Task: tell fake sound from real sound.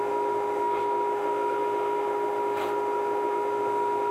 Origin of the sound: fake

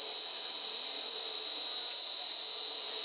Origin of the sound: real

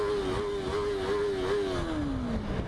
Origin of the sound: real